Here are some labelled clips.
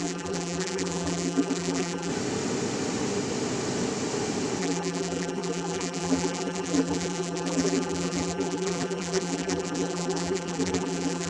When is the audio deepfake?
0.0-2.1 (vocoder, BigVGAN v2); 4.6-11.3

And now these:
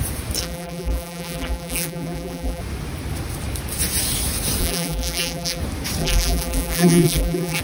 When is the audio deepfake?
0.4-2.6 (vocoder, BigVGAN v2); 4.6-5.6; 6.0-7.6

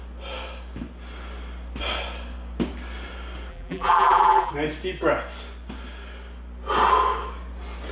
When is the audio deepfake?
3.5-4.5 (vocoder, BigVGAN v2)